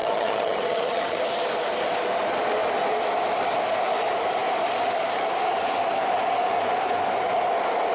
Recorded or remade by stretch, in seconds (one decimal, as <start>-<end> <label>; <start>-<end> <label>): 0.0-1.2 remade; 1.2-7.9 recorded